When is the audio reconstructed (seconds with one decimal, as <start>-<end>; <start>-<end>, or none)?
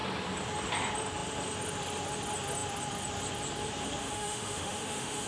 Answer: 4.0-5.3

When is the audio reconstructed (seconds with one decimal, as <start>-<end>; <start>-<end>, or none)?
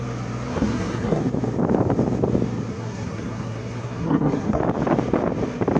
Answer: 0.5-1.2; 2.7-4.6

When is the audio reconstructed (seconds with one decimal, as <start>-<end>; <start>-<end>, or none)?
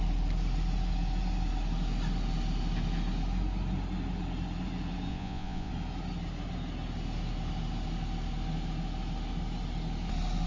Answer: 5.1-5.7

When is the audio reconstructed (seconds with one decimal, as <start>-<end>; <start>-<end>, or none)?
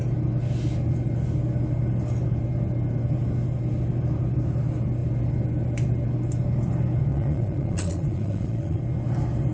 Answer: 7.1-8.8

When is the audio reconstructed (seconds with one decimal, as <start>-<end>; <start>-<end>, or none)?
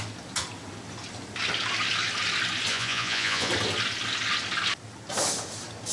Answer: 2.7-3.5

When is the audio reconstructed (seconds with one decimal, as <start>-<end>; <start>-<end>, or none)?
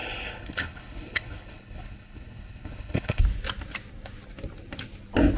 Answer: 0.0-3.2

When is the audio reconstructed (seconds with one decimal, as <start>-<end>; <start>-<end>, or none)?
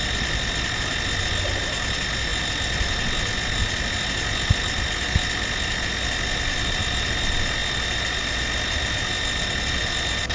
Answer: none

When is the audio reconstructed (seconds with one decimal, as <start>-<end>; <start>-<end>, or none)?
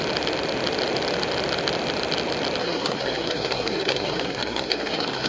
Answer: 2.6-5.3